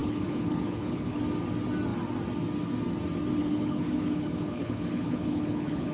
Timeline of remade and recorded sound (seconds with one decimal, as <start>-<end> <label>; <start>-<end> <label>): 0.0-1.2 remade; 1.2-3.4 recorded; 3.4-5.9 remade